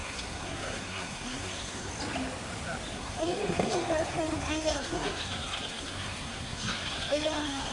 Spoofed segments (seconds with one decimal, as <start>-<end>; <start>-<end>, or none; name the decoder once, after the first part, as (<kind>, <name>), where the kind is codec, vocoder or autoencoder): 0.0-1.9 (codec, SNAC); 2.9-7.7